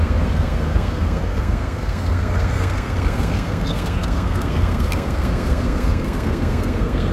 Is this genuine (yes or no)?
no